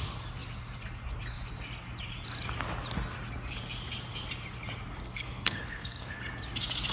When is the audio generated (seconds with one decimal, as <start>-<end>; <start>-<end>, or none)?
5.0-6.2